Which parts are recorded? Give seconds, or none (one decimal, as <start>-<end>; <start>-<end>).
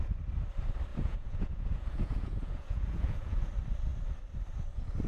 0.0-0.9; 3.5-5.1